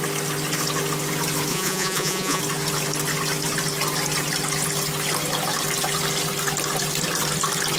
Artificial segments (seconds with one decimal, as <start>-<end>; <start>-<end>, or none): 1.5-2.4